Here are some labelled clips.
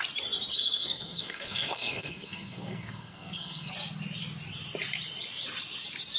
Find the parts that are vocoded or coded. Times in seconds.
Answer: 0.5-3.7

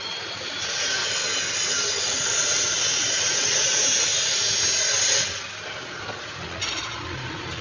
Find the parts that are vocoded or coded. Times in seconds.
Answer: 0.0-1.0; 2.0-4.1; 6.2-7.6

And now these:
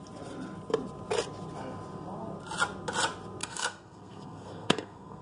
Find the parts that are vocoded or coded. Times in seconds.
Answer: 3.4-5.2